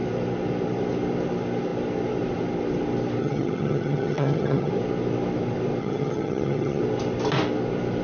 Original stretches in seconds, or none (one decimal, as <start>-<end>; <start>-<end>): 0.0-3.2; 4.7-5.8; 6.8-8.0